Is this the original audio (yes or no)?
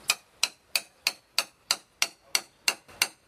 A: yes